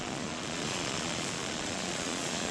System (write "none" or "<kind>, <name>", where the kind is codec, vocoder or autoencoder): vocoder, Vocos